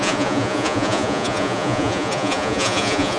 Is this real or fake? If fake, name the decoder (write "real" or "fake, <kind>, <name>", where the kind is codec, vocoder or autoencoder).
fake, vocoder, Vocos